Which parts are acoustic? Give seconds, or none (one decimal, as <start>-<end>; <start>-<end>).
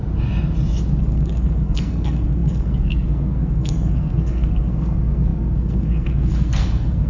0.0-1.0